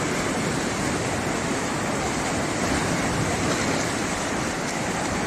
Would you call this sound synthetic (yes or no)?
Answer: yes